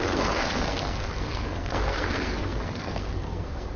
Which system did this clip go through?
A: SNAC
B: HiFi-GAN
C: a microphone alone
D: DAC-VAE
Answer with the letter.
A